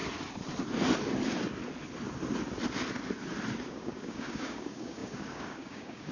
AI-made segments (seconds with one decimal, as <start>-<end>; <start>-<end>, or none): 3.7-6.1